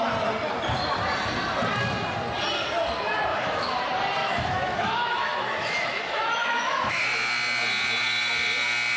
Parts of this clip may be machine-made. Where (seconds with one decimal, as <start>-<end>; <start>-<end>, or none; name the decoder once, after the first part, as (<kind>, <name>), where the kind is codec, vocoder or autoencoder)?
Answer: 3.3-3.8 (autoencoder, DAC-VAE); 4.2-7.0